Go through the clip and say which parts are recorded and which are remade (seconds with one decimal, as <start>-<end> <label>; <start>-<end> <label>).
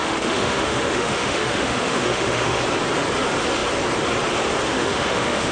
0.0-2.6 remade; 2.6-4.7 recorded; 4.7-5.5 remade